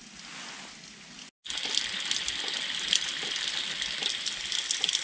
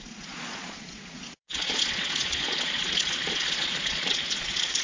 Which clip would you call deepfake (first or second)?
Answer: second